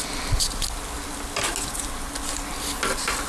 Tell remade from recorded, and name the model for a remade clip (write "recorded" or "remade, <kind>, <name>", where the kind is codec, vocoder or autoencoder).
recorded